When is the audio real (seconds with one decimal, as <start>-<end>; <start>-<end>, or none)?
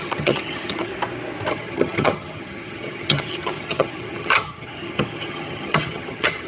0.9-1.5